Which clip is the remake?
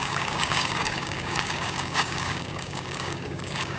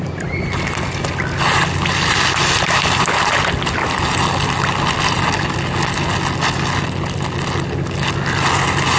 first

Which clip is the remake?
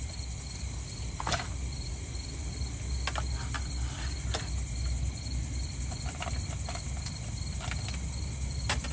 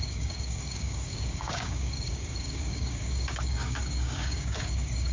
second